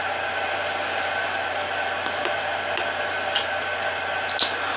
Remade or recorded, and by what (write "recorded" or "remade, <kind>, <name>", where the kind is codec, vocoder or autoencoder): recorded